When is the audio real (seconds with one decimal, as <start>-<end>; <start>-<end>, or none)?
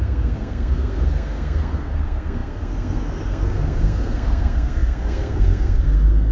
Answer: none